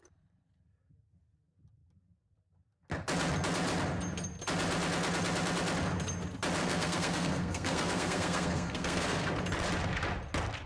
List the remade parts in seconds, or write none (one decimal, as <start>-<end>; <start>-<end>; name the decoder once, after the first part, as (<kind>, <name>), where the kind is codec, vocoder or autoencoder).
6.6-9.3 (codec, SNAC)